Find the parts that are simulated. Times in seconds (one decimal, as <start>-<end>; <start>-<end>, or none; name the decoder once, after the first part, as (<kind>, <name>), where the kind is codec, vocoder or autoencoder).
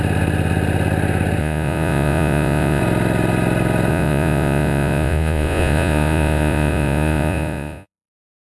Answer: 1.4-2.8 (vocoder, Vocos); 3.9-8.1